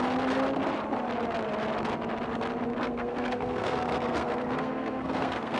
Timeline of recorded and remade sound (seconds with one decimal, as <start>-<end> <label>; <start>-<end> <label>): 0.0-2.7 recorded; 2.7-5.6 remade